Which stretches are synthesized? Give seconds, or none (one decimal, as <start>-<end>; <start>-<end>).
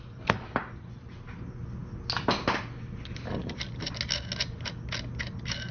3.4-3.9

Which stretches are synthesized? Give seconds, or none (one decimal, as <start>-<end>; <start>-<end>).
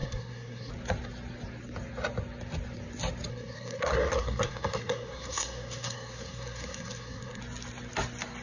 0.0-0.7; 3.3-7.4